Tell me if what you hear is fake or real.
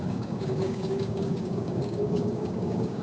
fake